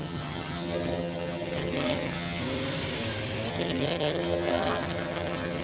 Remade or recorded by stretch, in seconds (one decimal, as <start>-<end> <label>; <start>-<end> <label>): 0.0-2.4 remade; 2.4-3.5 recorded; 3.5-5.6 remade